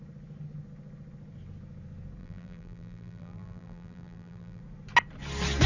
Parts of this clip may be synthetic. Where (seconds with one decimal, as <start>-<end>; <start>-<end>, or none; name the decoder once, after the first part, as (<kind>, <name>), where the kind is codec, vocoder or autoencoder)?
2.2-4.6 (vocoder, BigVGAN v2)